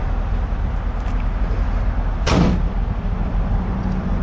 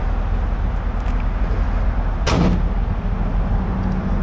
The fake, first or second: first